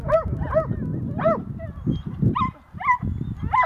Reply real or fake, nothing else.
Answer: real